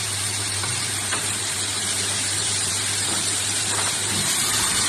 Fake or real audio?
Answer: fake